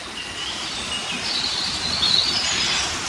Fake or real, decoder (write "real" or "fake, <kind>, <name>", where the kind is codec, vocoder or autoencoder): real